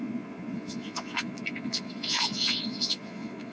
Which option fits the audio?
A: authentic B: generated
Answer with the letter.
B